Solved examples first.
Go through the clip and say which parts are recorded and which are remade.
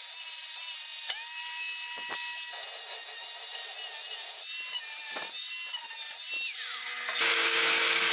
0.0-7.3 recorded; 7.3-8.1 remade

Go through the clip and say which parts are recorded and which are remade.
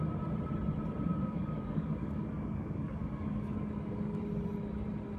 0.0-1.1 recorded; 1.1-4.2 remade; 4.2-5.2 recorded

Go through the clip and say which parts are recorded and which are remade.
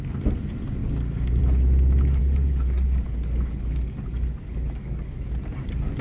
0.0-0.8 recorded; 0.8-1.4 remade; 1.4-2.2 recorded; 2.2-5.3 remade; 5.3-6.0 recorded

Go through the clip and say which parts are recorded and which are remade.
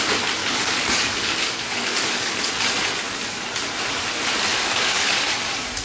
0.0-0.4 recorded; 0.4-2.5 remade; 2.5-4.5 recorded; 4.5-5.3 remade; 5.3-5.8 recorded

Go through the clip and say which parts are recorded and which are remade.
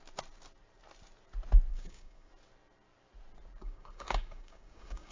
0.0-1.7 recorded; 1.7-2.3 remade; 2.3-3.6 recorded; 3.6-5.1 remade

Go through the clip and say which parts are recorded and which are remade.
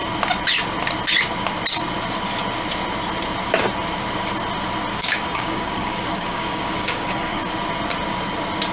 0.0-4.9 recorded; 4.9-7.4 remade; 7.4-8.7 recorded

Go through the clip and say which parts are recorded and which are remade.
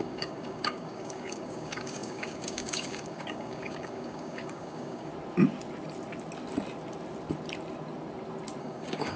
0.0-5.1 remade; 5.1-8.6 recorded; 8.6-9.2 remade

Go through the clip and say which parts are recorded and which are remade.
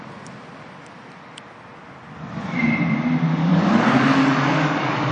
0.0-3.4 recorded; 3.4-5.1 remade